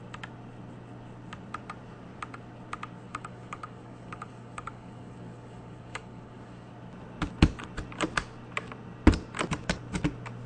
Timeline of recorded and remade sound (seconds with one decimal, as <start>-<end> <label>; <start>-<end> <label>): 0.0-3.1 recorded; 3.1-6.7 remade; 6.7-10.5 recorded